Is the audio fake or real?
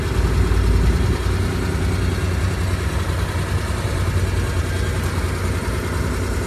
real